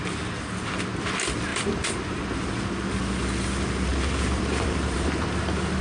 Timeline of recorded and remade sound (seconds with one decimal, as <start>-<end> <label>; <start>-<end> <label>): 0.0-1.5 recorded; 1.5-2.2 remade; 2.2-3.9 recorded; 3.9-5.1 remade; 5.1-5.8 recorded